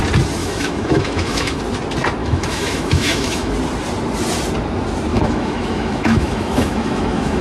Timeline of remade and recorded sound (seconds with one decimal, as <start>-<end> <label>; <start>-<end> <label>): 0.0-0.4 recorded; 0.4-1.6 remade; 1.6-2.2 recorded; 2.2-3.5 remade; 3.5-5.1 recorded; 5.1-7.4 remade